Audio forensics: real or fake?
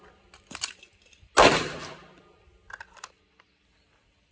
real